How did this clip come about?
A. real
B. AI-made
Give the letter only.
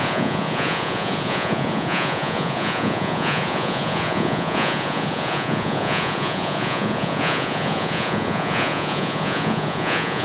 B